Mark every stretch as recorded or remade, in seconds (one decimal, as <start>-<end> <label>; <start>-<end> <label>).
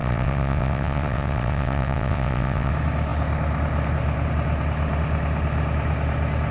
0.0-2.7 remade; 2.7-6.5 recorded